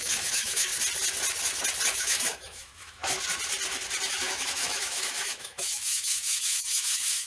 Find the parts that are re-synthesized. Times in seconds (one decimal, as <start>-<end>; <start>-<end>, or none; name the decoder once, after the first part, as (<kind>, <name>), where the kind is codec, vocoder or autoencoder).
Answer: 0.0-0.7 (autoencoder, DAC-VAE); 1.9-3.0; 4.1-7.3